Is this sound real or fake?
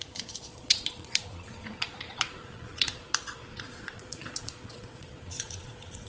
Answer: fake